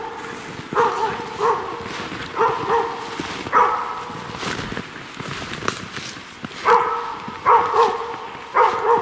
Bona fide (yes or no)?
yes